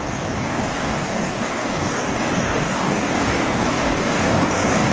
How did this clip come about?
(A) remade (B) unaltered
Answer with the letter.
A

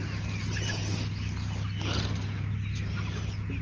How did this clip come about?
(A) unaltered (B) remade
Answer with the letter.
A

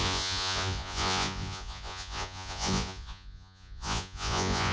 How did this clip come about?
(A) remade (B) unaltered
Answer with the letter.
A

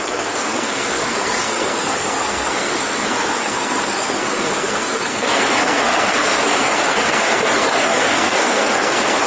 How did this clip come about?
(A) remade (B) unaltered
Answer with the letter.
A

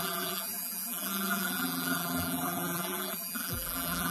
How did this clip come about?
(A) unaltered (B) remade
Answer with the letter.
B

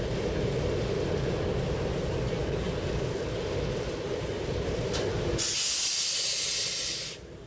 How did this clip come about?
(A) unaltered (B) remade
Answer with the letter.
A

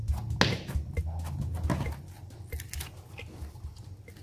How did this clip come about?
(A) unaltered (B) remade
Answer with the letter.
A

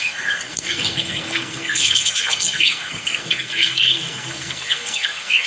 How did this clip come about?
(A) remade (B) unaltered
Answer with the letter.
A